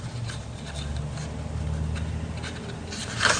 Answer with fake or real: real